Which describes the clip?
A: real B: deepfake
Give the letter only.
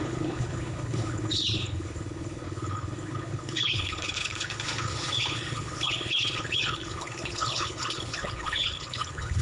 B